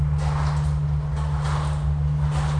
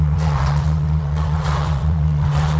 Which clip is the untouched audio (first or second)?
first